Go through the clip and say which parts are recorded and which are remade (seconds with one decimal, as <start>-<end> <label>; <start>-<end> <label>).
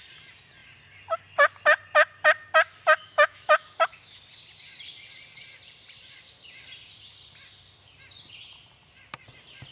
0.0-2.7 recorded; 2.7-4.2 remade; 4.2-9.7 recorded